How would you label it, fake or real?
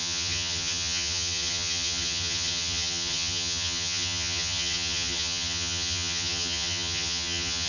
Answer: fake